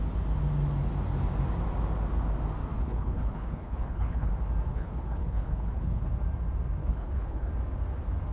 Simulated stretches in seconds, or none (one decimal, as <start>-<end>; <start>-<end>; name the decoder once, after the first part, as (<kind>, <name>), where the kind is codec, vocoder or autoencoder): 2.7-4.3 (codec, HILCodec); 4.7-6.1; 6.8-7.5